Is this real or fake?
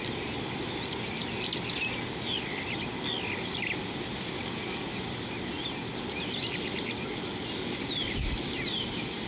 real